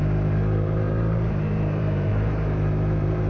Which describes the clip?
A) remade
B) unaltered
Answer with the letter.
A